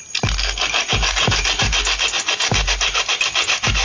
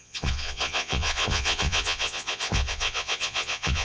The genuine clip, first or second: first